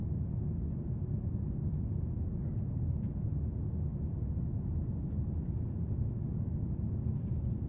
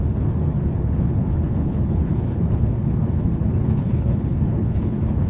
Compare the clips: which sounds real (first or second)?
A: first